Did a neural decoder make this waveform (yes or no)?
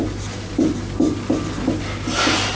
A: no